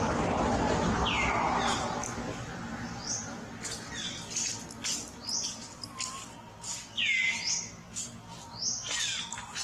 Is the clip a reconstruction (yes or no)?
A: no